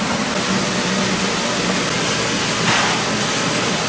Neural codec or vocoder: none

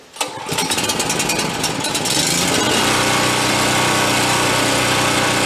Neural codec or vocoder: none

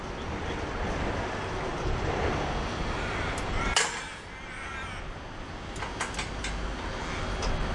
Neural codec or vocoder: none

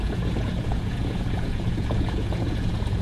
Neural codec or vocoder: vocoder, Vocos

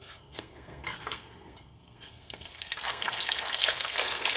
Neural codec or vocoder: codec, SNAC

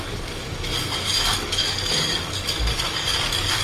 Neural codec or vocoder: codec, DAC